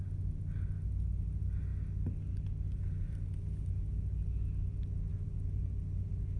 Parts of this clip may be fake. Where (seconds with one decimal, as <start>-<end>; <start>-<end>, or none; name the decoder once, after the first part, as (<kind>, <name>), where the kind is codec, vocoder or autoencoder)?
none